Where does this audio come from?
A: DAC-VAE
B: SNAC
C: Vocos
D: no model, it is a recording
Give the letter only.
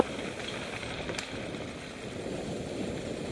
D